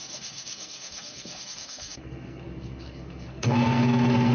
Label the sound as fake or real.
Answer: fake